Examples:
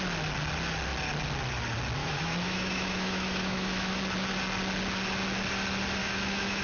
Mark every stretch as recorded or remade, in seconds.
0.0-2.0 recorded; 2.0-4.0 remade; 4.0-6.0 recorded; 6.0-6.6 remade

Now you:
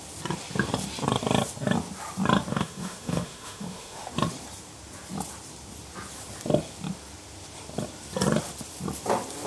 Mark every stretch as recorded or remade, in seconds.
0.0-2.5 recorded; 2.5-4.1 remade; 4.1-9.5 recorded

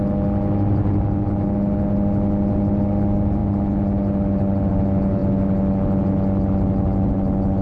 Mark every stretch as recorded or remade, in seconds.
0.0-7.6 recorded

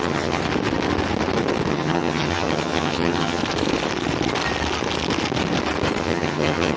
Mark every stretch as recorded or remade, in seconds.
0.0-0.4 remade; 0.4-1.7 recorded; 1.7-3.4 remade; 3.4-6.0 recorded; 6.0-6.8 remade

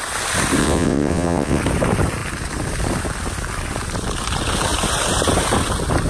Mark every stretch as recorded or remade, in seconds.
0.0-0.6 recorded; 0.6-1.6 remade; 1.6-6.1 recorded

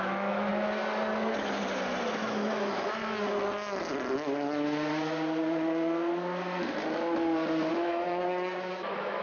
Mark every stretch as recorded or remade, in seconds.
0.0-0.5 remade; 0.5-2.1 recorded; 2.1-3.0 remade; 3.0-7.7 recorded; 7.7-9.2 remade